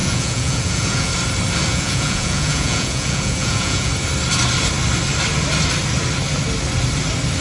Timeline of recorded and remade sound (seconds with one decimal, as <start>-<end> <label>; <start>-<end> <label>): 0.0-1.1 remade; 1.1-1.7 recorded; 1.7-3.9 remade; 3.9-7.4 recorded

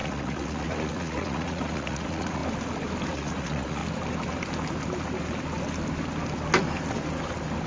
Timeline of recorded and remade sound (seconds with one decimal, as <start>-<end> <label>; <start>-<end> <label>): 0.0-2.4 remade; 2.4-3.1 recorded; 3.1-3.8 remade; 3.8-7.7 recorded